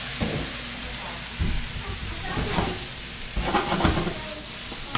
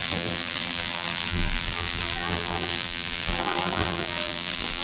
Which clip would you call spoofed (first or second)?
second